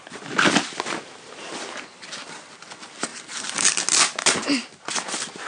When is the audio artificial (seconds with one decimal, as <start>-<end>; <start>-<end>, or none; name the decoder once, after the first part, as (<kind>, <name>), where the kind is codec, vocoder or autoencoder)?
3.1-3.8 (vocoder, BigVGAN v2)